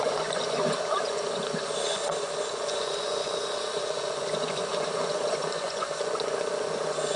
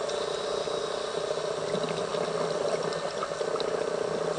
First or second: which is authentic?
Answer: second